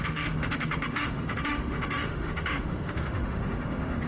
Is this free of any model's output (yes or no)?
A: no